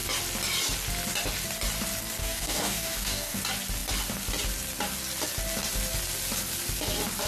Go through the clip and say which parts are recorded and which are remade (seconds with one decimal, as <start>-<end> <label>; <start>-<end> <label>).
0.0-2.2 recorded; 2.2-3.4 remade; 3.4-7.3 recorded